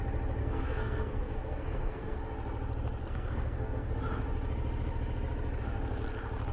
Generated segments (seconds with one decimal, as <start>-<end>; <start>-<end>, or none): 0.4-2.2; 3.0-3.9